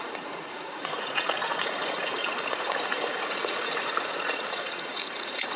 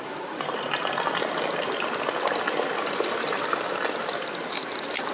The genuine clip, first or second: second